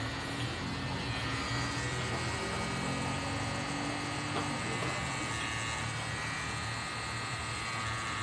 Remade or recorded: recorded